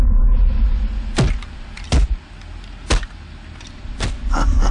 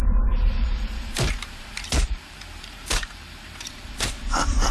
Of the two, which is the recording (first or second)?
first